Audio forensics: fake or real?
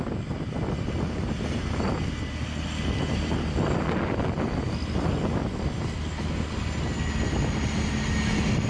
real